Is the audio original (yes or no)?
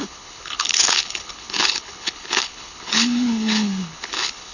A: no